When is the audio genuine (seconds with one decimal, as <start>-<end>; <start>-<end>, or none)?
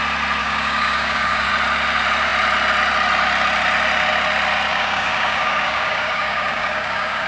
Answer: 0.0-0.4; 1.5-4.7